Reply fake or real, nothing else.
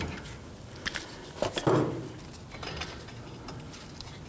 real